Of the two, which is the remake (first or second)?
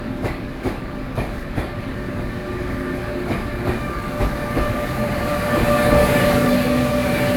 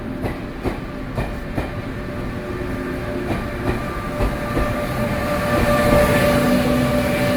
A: first